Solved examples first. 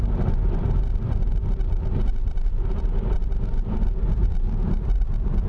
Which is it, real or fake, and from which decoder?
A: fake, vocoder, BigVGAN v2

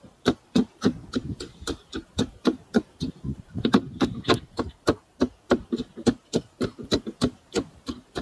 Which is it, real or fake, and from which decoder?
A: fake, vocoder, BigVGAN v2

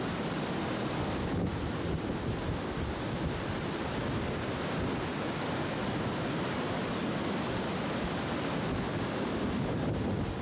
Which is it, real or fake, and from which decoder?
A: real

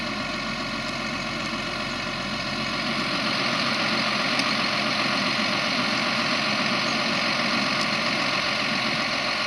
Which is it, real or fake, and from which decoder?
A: fake, vocoder, BigVGAN v2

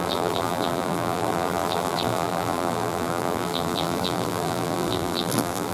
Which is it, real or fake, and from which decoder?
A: fake, vocoder, BigVGAN v2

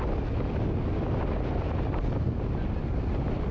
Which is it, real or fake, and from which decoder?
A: real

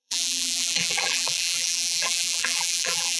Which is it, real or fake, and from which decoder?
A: fake, vocoder, BigVGAN v2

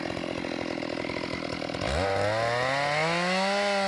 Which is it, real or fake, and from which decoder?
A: real